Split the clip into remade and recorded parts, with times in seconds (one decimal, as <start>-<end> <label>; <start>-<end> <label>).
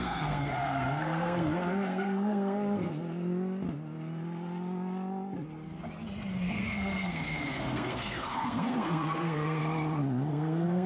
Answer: 0.0-2.9 remade; 2.9-6.5 recorded; 6.5-9.6 remade; 9.6-10.3 recorded; 10.3-10.9 remade